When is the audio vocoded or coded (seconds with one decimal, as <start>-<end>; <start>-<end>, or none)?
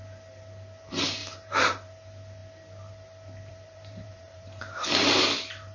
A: 1.2-1.9; 3.5-4.6